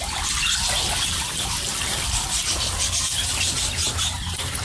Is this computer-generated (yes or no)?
no